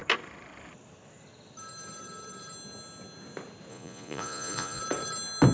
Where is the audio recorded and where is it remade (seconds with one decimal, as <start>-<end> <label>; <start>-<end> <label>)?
0.0-3.7 recorded; 3.7-4.8 remade; 4.8-5.5 recorded